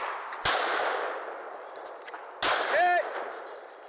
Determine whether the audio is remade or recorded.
recorded